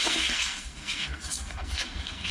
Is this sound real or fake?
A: fake